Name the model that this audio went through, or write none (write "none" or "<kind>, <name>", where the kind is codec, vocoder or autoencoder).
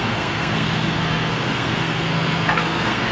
codec, SNAC